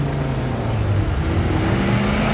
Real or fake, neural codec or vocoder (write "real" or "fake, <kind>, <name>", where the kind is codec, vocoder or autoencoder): real